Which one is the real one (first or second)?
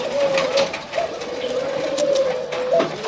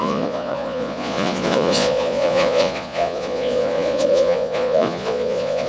first